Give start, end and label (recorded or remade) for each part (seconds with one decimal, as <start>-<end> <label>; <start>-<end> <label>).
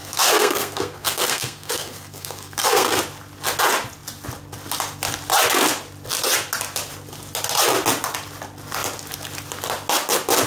0.0-3.0 remade; 3.0-10.5 recorded